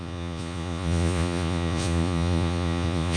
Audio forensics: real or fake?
fake